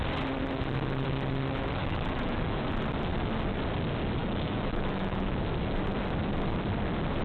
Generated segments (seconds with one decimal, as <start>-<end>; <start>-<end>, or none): 1.8-2.7; 4.2-5.4